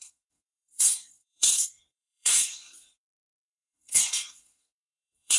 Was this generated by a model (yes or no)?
yes